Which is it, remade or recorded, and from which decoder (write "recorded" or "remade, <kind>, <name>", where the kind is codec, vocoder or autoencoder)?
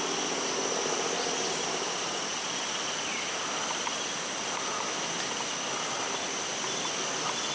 recorded